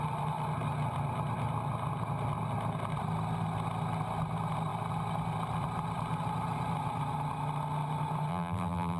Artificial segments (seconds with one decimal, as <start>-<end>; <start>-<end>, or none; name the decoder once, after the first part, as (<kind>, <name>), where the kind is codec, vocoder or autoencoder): 8.3-9.0 (vocoder, BigVGAN v2)